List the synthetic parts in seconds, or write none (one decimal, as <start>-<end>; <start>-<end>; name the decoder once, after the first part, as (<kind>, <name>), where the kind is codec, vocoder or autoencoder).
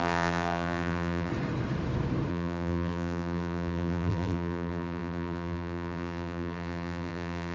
0.0-1.3 (vocoder, BigVGAN v2); 2.3-7.5